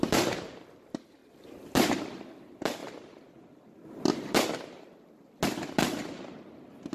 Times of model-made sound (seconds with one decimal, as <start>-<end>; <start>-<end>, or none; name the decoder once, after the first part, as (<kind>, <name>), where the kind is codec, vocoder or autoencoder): none